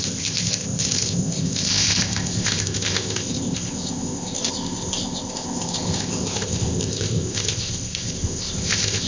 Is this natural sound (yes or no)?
no